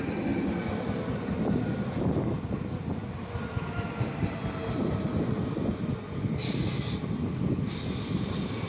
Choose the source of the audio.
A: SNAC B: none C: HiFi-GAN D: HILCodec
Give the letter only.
B